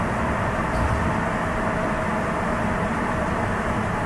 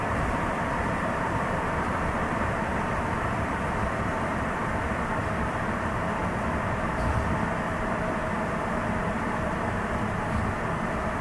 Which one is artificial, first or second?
second